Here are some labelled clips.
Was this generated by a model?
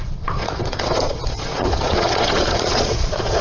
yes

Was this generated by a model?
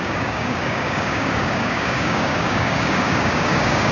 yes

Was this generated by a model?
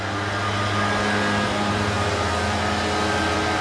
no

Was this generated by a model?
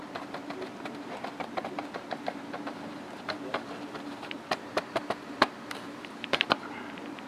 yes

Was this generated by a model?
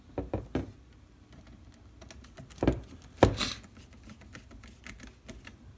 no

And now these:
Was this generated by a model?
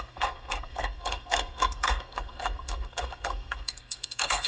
yes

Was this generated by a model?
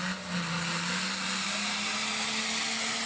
no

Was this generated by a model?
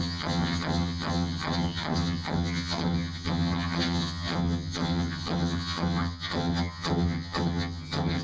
yes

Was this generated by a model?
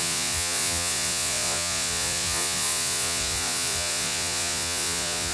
yes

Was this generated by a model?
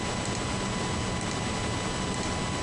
no